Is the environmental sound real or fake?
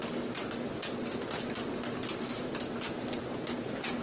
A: real